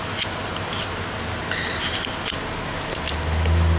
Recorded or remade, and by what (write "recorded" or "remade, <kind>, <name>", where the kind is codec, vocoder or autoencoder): recorded